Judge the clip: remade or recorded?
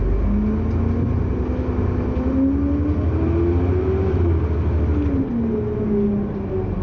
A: recorded